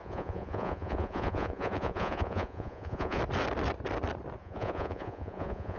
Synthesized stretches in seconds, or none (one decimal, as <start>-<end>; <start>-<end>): 0.0-3.2; 4.4-5.8